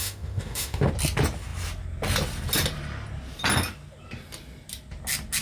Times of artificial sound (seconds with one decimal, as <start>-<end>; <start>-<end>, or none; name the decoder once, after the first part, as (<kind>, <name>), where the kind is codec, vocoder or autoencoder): 0.0-0.9 (autoencoder, DAC-VAE)